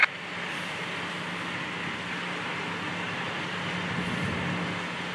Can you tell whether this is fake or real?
real